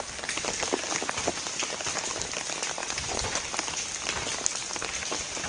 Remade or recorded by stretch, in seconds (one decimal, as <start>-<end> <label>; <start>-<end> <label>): 0.0-2.8 recorded; 2.8-3.4 remade; 3.4-5.5 recorded